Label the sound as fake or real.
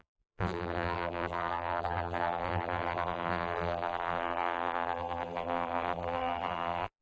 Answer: fake